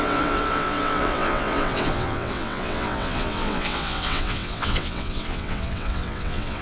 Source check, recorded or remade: remade